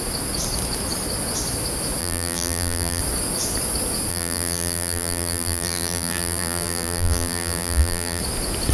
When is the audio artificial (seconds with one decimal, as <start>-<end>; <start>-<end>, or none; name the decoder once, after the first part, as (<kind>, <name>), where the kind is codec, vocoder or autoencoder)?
2.0-3.0 (vocoder, BigVGAN v2); 4.1-8.2